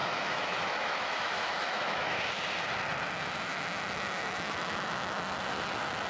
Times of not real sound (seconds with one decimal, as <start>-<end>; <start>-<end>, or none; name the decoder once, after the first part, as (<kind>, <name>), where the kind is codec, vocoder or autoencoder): 0.0-2.2 (autoencoder, DAC-VAE); 3.5-5.2